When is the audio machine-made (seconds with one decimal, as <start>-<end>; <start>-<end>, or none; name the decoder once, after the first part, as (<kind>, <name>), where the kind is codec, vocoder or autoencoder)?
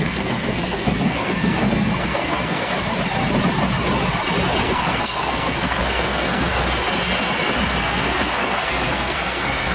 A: 0.0-2.9 (codec, SNAC); 4.6-6.5; 7.8-9.7